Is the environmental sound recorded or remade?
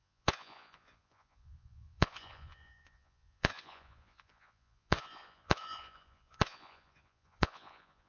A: remade